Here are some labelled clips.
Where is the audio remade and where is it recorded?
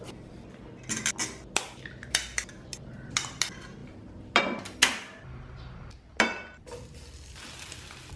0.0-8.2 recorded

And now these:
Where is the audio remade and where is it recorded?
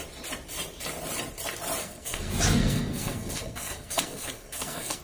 0.0-1.8 recorded; 1.8-5.0 remade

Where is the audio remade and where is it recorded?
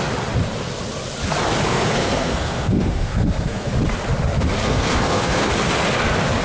0.0-1.6 recorded; 1.6-3.7 remade; 3.7-4.6 recorded; 4.6-5.5 remade; 5.5-6.4 recorded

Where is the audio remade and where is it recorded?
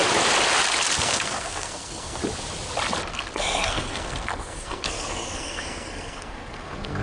0.0-1.0 recorded; 1.0-2.2 remade; 2.2-3.1 recorded; 3.1-7.0 remade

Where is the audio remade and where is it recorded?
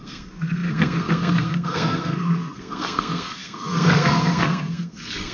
0.0-5.3 remade